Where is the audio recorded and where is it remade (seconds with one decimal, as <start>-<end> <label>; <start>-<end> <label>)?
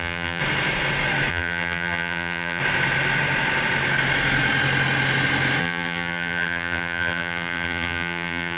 0.0-0.4 remade; 0.4-1.3 recorded; 1.3-2.6 remade; 2.6-5.6 recorded; 5.6-8.6 remade